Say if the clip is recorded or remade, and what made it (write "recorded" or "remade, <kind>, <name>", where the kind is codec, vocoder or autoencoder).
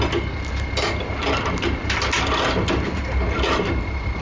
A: recorded